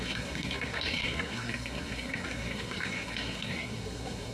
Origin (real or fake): fake